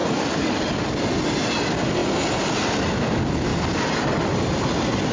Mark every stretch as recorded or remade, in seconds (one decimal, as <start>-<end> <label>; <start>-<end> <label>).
0.0-3.5 recorded; 3.5-4.2 remade; 4.2-5.1 recorded